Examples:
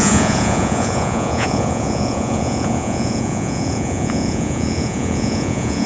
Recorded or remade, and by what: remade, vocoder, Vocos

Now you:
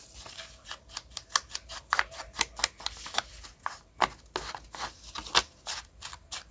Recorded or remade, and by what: recorded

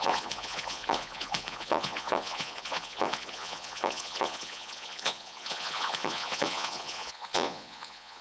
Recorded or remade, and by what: remade, vocoder, Vocos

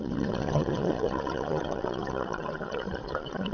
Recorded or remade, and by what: remade, vocoder, Vocos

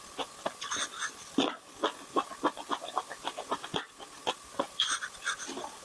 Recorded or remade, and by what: recorded